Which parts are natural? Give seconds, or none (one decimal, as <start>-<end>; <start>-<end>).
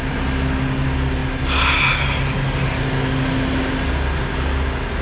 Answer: 0.0-5.0